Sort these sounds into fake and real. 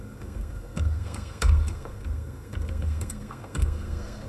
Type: fake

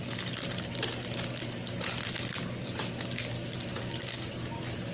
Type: real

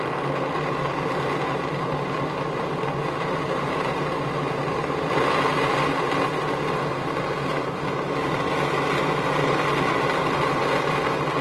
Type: real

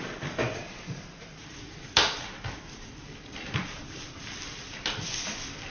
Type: fake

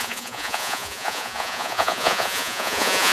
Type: fake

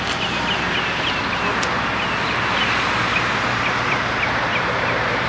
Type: real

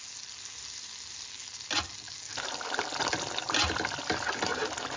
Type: real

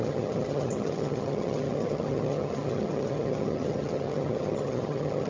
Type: fake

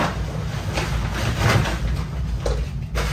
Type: real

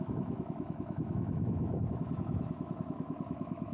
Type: fake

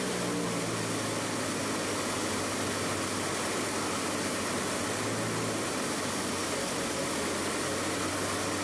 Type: real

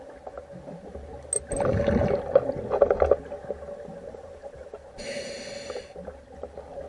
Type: real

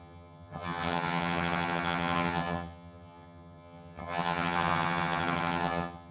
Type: fake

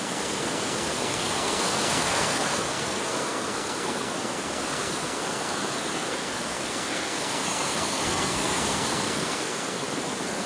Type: fake